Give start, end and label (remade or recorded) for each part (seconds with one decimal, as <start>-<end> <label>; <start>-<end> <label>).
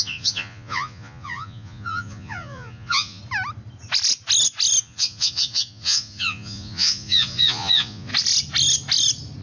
0.0-3.2 remade; 3.2-4.8 recorded; 4.8-8.1 remade; 8.1-9.4 recorded